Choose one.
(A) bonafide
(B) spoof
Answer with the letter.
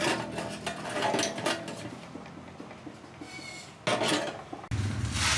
A